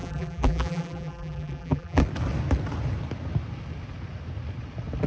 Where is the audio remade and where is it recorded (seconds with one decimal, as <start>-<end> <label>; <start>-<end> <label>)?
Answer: 0.0-2.0 remade; 2.0-5.1 recorded